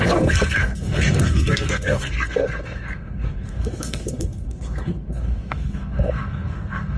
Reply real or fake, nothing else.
fake